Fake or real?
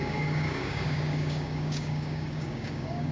fake